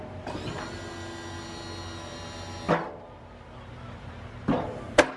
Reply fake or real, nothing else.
real